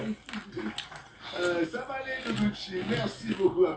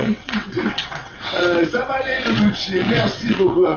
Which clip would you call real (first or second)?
first